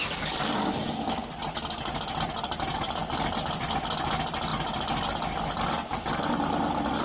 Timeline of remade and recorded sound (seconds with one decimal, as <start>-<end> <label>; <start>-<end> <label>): 0.0-7.0 recorded